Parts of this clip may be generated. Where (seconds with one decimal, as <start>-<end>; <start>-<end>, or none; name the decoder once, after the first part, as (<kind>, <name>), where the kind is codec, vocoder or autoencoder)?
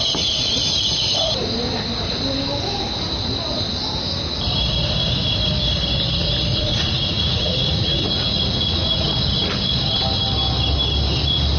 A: 6.5-9.1 (vocoder, Vocos)